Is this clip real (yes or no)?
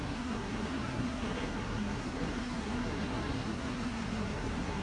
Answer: no